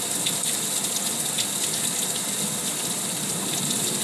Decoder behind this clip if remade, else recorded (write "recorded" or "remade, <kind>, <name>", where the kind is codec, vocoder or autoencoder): recorded